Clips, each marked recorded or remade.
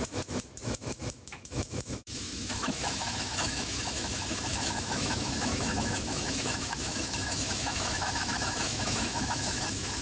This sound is remade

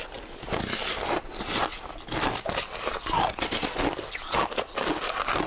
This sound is recorded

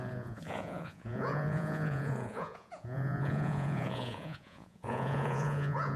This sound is remade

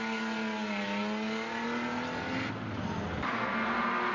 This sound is recorded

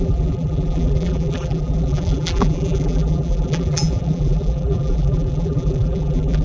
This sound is remade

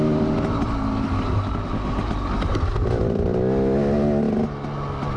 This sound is recorded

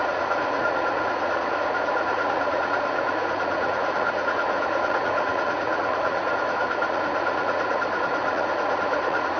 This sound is remade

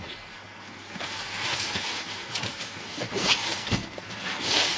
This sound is remade